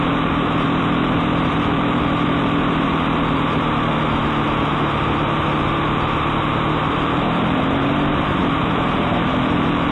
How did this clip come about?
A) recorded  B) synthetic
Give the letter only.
B